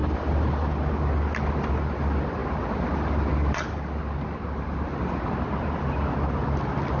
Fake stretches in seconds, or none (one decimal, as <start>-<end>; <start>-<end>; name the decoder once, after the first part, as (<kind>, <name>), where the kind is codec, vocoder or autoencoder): none